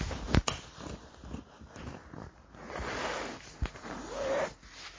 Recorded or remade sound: recorded